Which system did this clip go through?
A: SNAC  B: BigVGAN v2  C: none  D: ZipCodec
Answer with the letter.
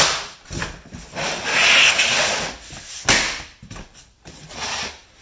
C